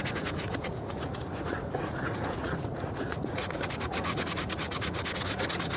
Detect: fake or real fake